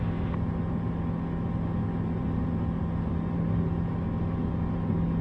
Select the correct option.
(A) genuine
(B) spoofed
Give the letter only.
A